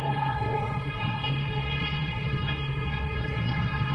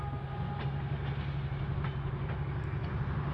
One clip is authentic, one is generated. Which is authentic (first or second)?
second